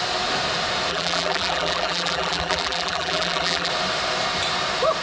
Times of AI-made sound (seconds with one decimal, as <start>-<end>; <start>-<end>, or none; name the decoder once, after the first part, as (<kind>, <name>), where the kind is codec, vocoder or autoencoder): 0.9-3.7 (vocoder, BigVGAN v2)